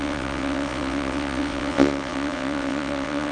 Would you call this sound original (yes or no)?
no